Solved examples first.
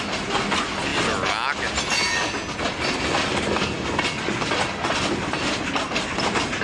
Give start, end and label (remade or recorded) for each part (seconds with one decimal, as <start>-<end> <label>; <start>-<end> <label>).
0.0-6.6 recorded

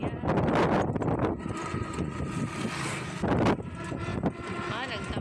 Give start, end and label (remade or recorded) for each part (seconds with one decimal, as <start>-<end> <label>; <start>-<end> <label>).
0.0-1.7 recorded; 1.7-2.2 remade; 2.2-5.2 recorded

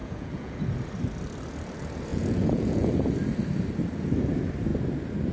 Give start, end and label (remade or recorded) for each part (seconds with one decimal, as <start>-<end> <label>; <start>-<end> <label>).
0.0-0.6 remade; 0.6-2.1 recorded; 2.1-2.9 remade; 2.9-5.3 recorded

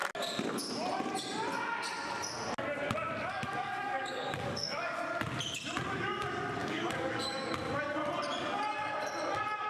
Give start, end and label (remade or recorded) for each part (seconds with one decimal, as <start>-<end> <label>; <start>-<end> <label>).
0.0-3.3 recorded; 3.3-5.0 remade; 5.0-6.6 recorded; 6.6-7.5 remade; 7.5-9.7 recorded